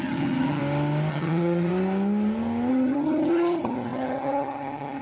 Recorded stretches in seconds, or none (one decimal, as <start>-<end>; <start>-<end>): 0.6-1.1; 1.7-2.7